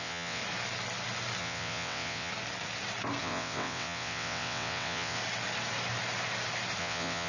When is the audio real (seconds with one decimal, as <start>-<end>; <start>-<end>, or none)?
0.4-1.4; 2.3-3.2; 5.2-6.8